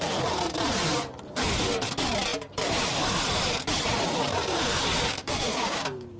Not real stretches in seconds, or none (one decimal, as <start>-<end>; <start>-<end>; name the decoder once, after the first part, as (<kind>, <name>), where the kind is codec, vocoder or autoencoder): 5.2-6.2 (codec, DAC)